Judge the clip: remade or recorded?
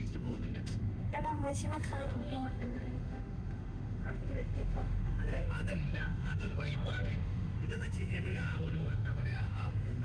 remade